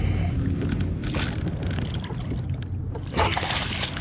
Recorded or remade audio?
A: recorded